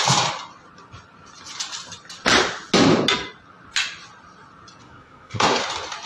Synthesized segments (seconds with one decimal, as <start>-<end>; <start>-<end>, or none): 4.8-5.6

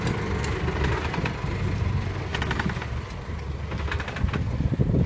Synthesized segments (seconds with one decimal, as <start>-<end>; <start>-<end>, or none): none